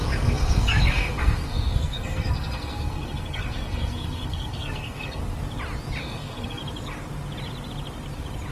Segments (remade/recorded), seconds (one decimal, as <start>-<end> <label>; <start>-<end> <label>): 0.0-5.2 remade; 5.2-6.0 recorded; 6.0-6.6 remade; 6.6-8.5 recorded